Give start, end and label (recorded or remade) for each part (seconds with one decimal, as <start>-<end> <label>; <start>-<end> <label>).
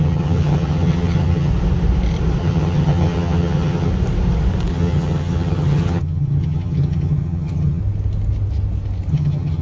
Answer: 0.0-1.5 remade; 1.5-2.4 recorded; 2.4-3.9 remade; 3.9-4.7 recorded; 4.7-7.8 remade; 7.8-9.1 recorded; 9.1-9.6 remade